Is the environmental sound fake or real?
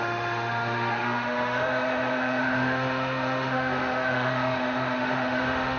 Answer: fake